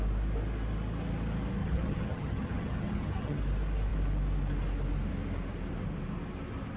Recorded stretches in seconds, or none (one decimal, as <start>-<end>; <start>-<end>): 0.0-1.6; 3.4-6.8

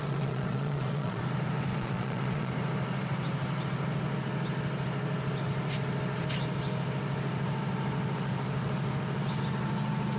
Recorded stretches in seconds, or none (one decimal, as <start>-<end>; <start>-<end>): 1.2-1.7; 2.5-10.2

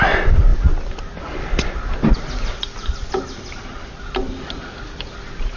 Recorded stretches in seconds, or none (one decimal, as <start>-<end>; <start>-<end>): 0.0-5.6